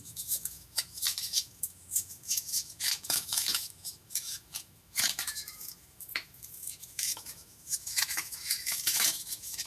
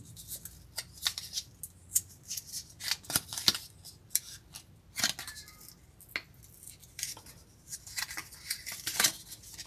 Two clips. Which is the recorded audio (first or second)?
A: second